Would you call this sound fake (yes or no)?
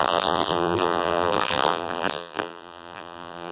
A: yes